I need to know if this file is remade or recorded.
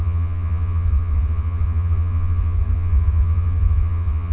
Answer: remade